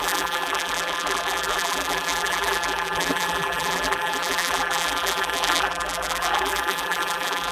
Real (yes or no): no